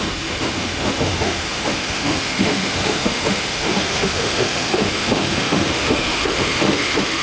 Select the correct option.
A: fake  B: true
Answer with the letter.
A